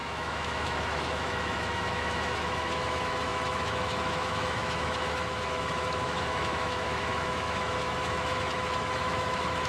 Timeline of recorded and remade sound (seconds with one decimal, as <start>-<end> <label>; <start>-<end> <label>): 0.0-9.7 remade